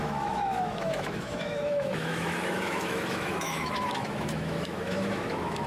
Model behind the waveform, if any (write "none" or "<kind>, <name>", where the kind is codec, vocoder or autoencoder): autoencoder, DAC-VAE